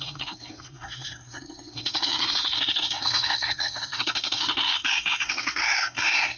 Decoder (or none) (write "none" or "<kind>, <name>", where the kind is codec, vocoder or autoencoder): codec, SNAC